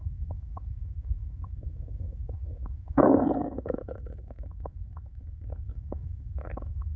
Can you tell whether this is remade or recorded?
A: remade